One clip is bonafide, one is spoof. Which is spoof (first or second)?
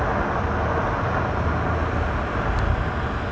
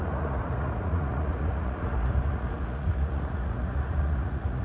second